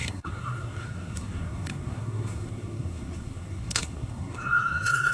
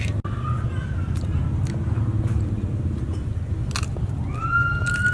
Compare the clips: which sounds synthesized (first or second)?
first